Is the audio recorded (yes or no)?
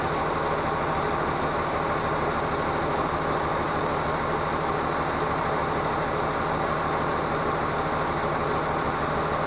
yes